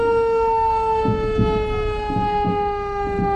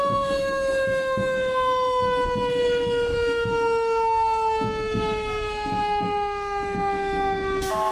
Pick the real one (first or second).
first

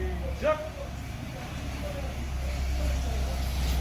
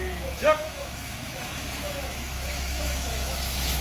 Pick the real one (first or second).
first